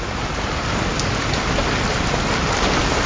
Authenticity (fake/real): real